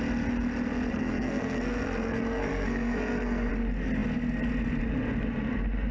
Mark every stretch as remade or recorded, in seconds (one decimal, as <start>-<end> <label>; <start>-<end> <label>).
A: 0.0-0.9 recorded; 0.9-3.5 remade; 3.5-5.9 recorded